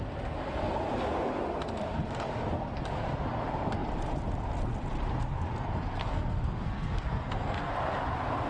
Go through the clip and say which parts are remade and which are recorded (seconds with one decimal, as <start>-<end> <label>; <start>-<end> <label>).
0.0-6.0 recorded; 6.0-7.7 remade; 7.7-8.5 recorded